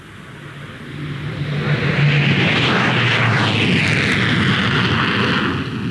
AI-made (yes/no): no